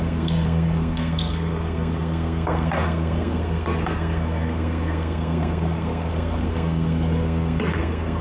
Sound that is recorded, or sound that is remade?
remade